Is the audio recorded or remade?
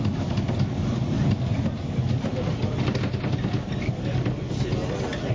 recorded